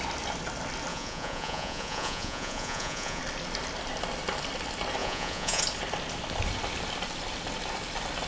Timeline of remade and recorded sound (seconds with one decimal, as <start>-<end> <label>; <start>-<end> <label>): 0.0-0.9 recorded; 0.9-3.2 remade; 3.2-5.0 recorded; 5.0-5.6 remade; 5.6-8.3 recorded